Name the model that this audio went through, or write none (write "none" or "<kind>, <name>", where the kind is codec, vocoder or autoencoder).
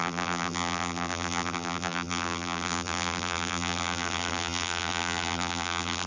vocoder, BigVGAN v2